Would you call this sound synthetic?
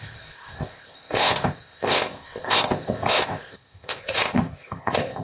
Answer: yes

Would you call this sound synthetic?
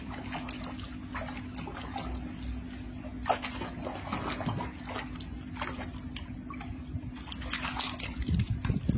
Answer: no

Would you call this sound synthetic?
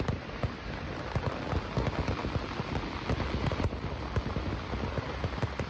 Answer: no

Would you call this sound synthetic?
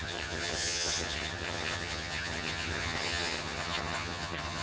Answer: yes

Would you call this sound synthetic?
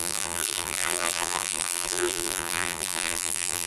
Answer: yes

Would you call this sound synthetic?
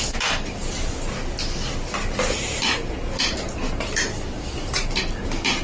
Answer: no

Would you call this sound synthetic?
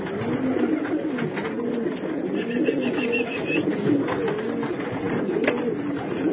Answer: no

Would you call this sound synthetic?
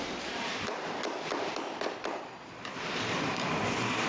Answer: yes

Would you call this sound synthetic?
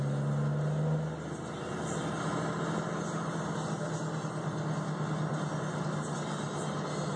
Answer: no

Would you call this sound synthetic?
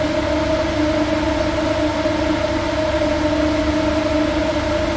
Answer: no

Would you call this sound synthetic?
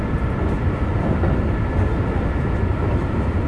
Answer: no